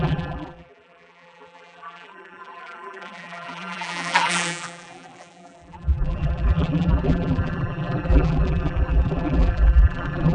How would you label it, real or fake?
fake